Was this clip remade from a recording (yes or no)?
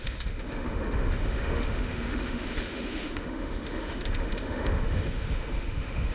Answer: yes